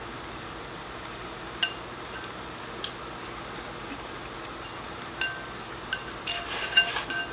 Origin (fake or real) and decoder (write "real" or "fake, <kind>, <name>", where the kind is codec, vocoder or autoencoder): real